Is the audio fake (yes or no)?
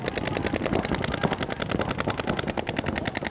no